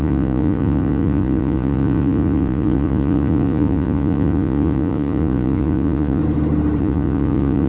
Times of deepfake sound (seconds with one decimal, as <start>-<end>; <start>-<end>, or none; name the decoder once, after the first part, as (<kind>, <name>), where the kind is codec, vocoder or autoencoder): 0.0-6.2 (vocoder, Vocos); 6.8-7.7

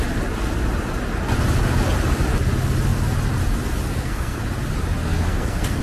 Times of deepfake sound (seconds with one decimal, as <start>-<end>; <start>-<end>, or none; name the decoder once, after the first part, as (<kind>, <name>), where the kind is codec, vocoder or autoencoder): 3.9-4.4 (codec, SNAC); 5.0-5.8

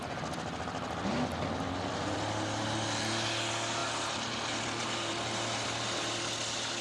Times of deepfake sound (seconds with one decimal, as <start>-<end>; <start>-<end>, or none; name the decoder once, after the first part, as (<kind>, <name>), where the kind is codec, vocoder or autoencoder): none

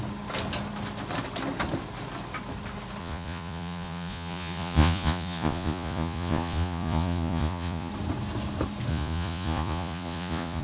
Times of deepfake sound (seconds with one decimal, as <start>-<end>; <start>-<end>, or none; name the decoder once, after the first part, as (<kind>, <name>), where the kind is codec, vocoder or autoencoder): 3.0-7.9 (vocoder, Vocos); 8.9-10.6

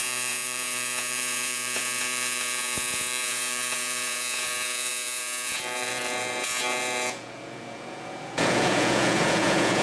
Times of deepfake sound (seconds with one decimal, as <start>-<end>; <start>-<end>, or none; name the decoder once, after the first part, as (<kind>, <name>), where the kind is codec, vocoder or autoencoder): 0.0-9.8 (vocoder, Vocos)

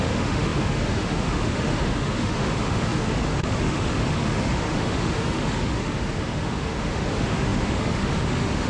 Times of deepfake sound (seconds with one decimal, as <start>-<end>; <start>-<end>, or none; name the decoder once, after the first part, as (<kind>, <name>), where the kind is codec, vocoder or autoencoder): 0.0-8.7 (autoencoder, DAC-VAE)